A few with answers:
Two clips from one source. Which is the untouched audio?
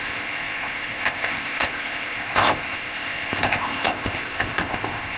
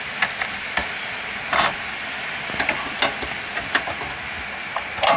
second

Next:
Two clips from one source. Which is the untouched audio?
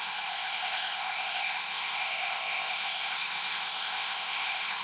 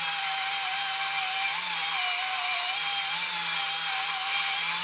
second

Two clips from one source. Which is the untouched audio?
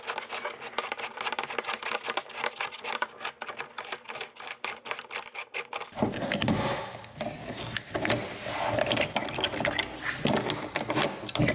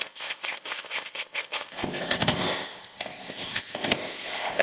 first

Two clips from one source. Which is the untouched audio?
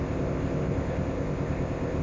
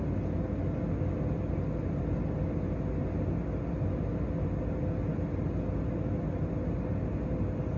second